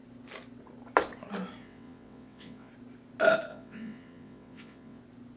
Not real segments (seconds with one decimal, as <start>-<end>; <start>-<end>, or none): 1.6-2.7; 3.5-5.0